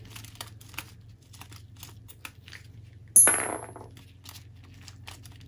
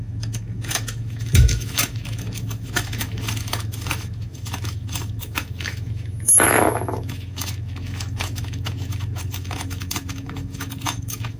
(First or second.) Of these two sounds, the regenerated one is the second